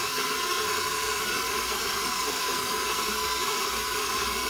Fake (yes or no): yes